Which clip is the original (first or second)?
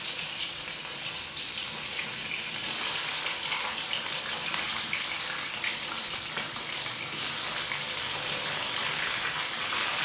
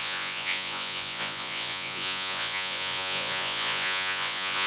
first